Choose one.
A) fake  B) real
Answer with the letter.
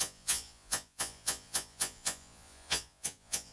A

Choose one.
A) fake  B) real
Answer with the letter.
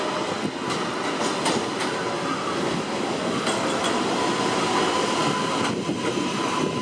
B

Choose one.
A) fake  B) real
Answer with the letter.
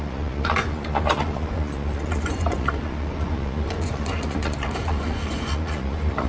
A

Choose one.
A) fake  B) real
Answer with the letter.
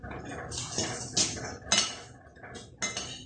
B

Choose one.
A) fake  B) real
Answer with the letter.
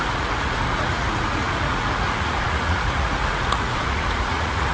A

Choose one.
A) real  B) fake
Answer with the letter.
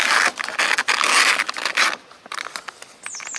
A